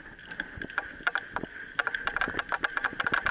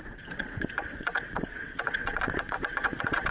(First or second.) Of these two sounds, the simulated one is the second